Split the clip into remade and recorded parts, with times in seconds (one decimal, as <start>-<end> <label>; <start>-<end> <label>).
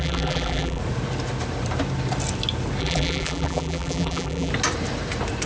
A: 0.0-0.8 remade; 0.8-2.8 recorded; 2.8-4.5 remade; 4.5-5.5 recorded